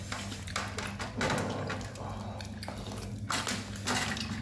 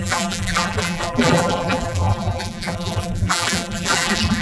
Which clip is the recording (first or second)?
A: first